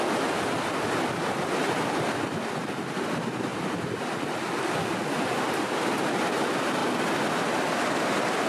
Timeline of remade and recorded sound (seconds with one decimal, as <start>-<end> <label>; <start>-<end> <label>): 0.0-8.5 recorded